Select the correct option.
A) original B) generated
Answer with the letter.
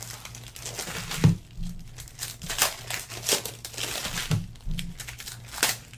A